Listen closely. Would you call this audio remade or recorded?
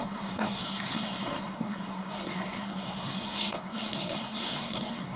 remade